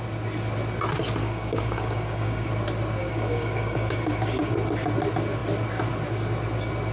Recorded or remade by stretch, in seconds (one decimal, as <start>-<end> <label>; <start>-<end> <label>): 0.0-1.2 recorded; 1.2-2.5 remade; 2.5-3.0 recorded; 3.0-4.5 remade; 4.5-6.9 recorded